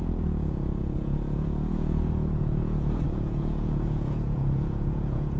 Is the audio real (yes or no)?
no